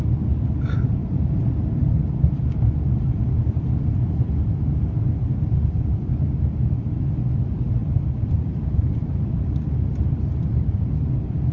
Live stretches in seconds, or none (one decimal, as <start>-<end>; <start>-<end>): 0.0-1.0; 1.9-7.8; 9.2-11.5

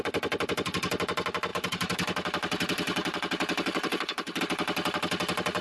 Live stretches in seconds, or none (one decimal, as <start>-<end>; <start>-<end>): 0.0-1.5; 4.4-5.6

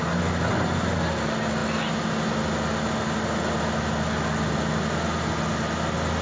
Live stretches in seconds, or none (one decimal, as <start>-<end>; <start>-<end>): 0.0-6.2